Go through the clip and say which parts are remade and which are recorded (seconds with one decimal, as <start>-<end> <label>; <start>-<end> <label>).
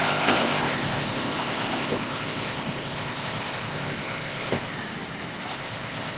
0.0-4.7 remade; 4.7-5.5 recorded; 5.5-6.2 remade